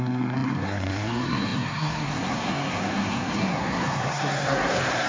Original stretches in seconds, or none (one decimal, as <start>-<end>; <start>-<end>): none